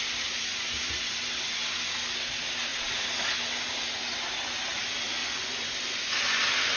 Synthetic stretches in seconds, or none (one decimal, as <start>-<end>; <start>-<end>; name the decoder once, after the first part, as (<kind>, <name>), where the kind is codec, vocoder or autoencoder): 0.5-1.3 (vocoder, Vocos); 5.2-6.8